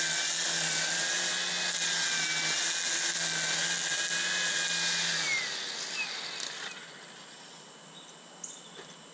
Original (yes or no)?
yes